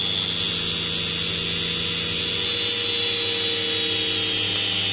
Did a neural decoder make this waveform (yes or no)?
no